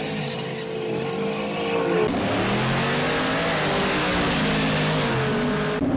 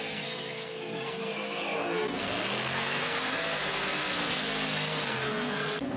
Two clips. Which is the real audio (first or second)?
first